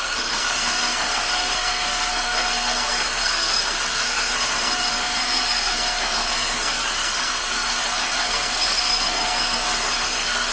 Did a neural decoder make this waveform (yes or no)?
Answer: yes